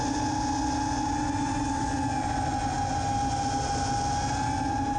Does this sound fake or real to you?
real